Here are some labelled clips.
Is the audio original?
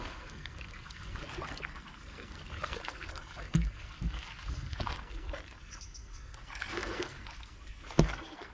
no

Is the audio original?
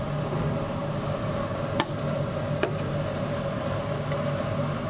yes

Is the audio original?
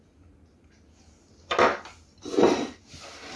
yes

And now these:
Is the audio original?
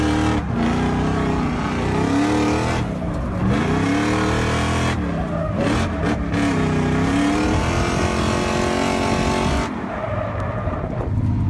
yes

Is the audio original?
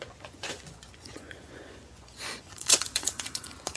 no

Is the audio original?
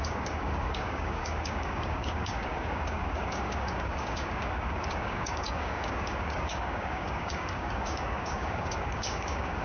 no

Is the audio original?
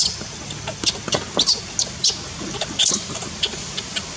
yes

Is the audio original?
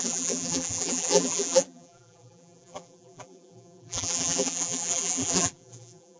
no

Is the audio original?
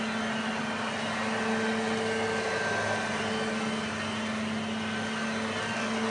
yes